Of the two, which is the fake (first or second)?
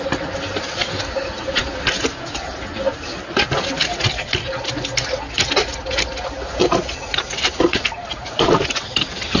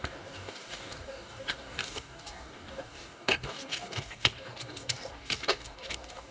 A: second